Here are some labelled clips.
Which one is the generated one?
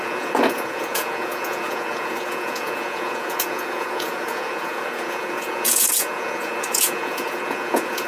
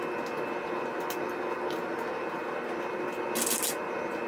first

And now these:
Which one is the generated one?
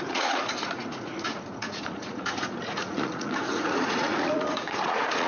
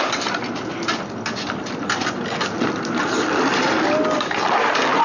first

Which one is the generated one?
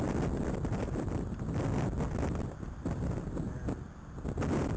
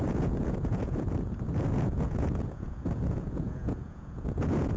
second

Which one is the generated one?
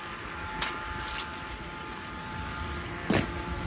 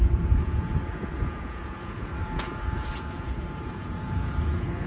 second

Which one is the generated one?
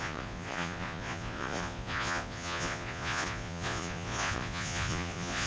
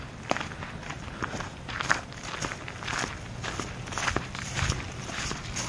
first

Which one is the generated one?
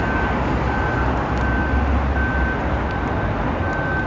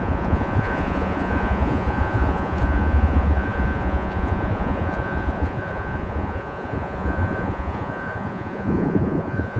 second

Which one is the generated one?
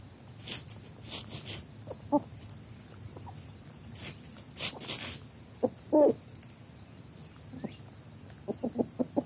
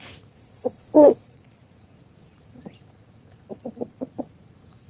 second